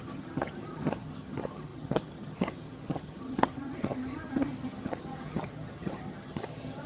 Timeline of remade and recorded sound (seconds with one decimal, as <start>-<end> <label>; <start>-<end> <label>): 0.0-6.9 remade